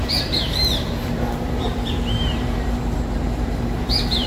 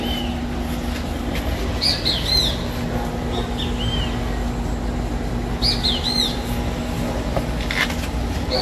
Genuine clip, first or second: second